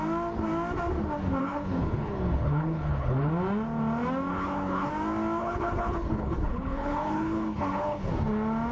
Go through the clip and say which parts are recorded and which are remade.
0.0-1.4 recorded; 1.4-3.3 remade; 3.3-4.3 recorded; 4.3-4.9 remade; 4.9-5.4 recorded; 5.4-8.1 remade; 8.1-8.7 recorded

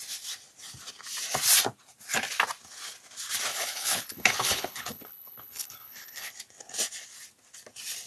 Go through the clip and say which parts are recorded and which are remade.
0.0-3.5 recorded; 3.5-6.3 remade; 6.3-8.1 recorded

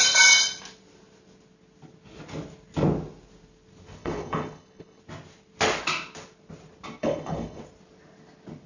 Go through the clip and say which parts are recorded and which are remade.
0.0-4.0 recorded; 4.0-5.0 remade; 5.0-7.0 recorded; 7.0-7.6 remade; 7.6-8.7 recorded

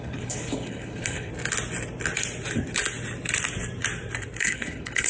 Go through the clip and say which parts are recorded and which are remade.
0.0-1.3 remade; 1.3-4.4 recorded; 4.4-5.1 remade

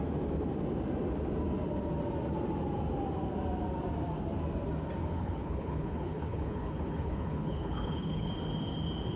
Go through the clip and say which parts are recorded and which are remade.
0.0-5.0 recorded; 5.0-8.3 remade; 8.3-9.2 recorded

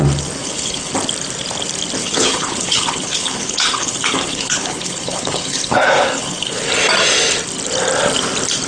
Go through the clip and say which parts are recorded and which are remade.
0.0-0.4 recorded; 0.4-0.9 remade; 0.9-2.0 recorded; 2.0-6.7 remade; 6.7-8.7 recorded